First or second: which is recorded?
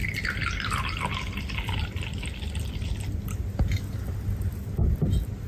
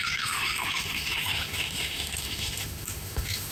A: first